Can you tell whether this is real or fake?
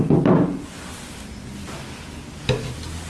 real